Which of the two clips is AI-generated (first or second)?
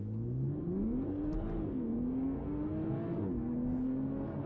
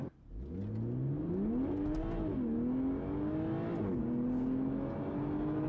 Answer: first